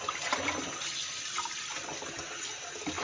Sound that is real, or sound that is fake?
real